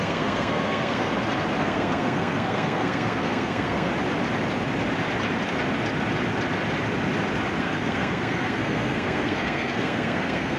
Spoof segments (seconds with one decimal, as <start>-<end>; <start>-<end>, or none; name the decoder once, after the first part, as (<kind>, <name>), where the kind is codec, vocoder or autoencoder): 0.0-1.1 (codec, SNAC); 1.6-3.9; 7.6-10.6